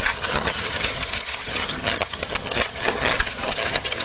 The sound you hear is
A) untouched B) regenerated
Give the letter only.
B